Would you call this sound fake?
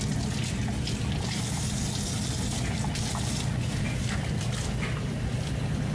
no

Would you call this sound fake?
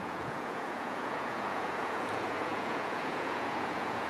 yes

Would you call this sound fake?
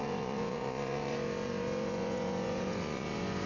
yes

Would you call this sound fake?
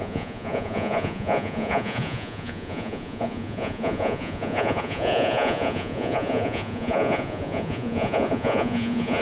yes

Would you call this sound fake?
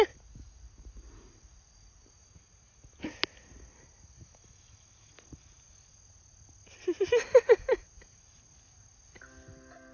no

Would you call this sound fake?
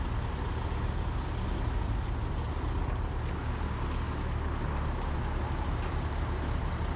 no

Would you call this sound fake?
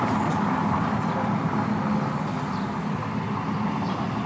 no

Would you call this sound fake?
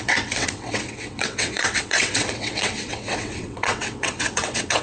yes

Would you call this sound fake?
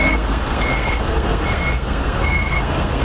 yes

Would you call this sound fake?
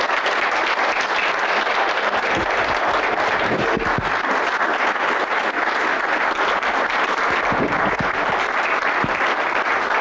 no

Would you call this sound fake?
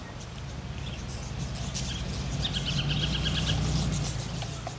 no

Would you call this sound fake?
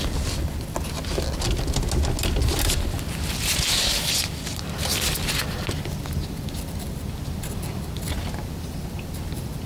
no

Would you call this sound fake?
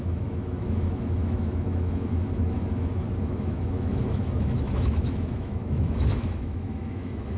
yes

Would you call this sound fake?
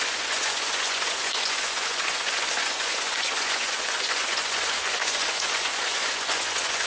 yes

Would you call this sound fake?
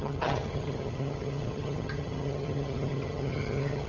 yes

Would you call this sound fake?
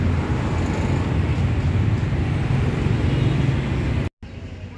no